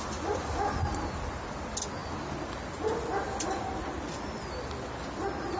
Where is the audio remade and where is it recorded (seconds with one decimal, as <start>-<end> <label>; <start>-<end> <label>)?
0.0-5.6 recorded